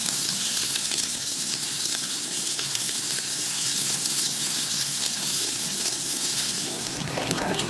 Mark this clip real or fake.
fake